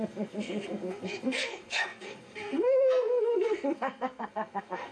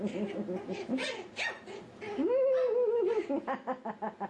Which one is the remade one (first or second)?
first